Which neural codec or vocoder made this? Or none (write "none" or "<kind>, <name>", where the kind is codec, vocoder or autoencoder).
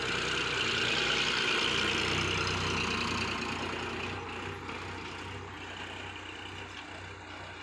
none